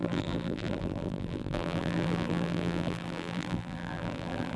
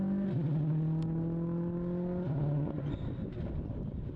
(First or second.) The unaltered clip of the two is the second